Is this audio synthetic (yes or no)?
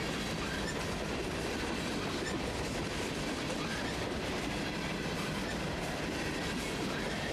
no